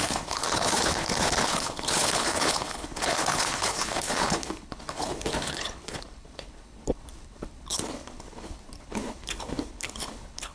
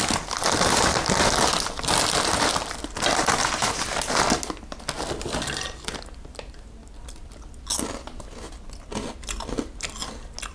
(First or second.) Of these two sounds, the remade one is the first